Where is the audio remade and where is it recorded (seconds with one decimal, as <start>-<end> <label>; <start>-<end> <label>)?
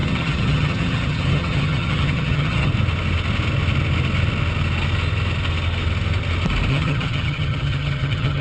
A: 0.0-2.7 remade; 2.7-6.7 recorded; 6.7-8.4 remade